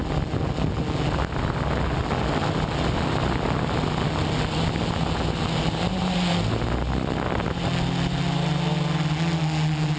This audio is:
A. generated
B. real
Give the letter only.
B